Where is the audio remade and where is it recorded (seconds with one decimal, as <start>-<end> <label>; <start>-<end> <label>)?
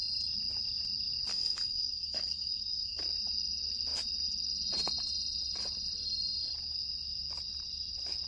0.0-1.3 recorded; 1.3-3.0 remade; 3.0-8.3 recorded